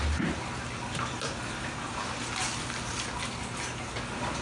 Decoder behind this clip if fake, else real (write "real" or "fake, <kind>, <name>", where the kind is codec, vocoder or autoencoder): real